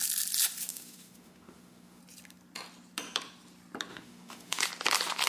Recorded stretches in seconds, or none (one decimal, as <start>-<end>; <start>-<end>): 0.0-0.7; 2.0-3.9; 4.6-5.3